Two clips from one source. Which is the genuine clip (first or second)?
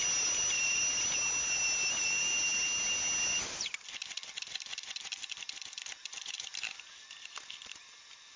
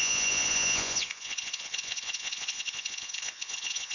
first